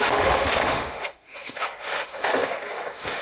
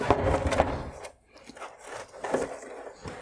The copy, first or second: first